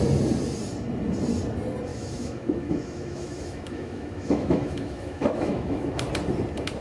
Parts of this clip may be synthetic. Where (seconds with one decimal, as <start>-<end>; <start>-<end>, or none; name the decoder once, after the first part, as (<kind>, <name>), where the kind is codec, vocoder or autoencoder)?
1.9-6.0 (autoencoder, DAC-VAE)